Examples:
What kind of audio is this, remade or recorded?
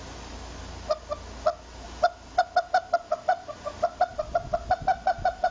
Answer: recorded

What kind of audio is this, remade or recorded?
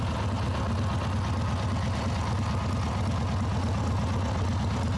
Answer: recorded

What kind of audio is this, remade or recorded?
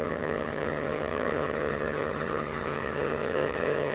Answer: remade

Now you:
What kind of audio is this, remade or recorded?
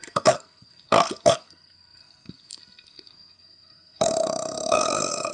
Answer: remade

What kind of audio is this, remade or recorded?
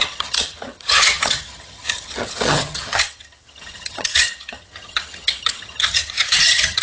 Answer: remade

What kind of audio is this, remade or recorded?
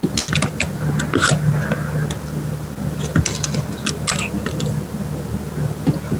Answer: recorded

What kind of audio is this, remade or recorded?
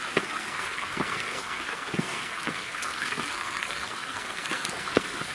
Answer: remade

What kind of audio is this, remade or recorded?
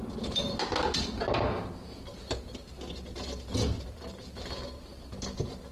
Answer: recorded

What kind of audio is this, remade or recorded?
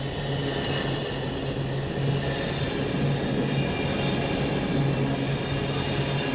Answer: recorded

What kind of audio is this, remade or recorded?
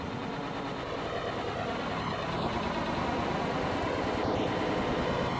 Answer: recorded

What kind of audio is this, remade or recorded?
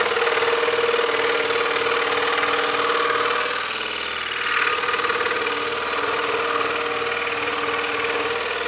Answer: recorded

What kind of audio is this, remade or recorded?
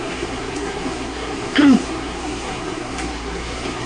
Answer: remade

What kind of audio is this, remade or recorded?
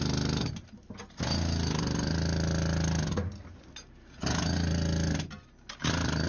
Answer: recorded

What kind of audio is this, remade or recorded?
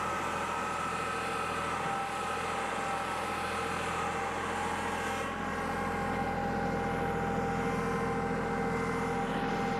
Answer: recorded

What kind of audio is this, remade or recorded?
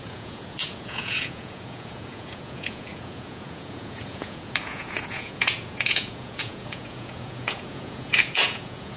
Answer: remade